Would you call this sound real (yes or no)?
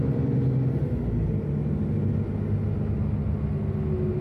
yes